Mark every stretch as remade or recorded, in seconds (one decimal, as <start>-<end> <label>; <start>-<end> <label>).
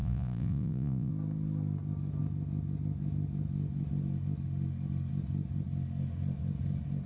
0.0-1.1 remade; 1.1-7.1 recorded